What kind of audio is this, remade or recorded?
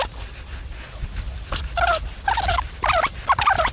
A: recorded